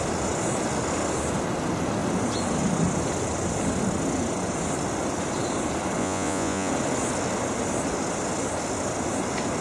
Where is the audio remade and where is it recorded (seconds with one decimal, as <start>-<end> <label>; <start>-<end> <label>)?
0.0-6.0 recorded; 6.0-6.7 remade; 6.7-9.6 recorded